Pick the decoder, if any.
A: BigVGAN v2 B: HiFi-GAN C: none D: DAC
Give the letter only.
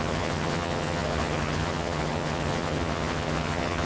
B